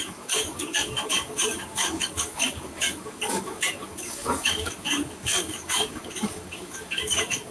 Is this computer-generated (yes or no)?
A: yes